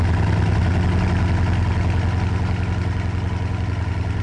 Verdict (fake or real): real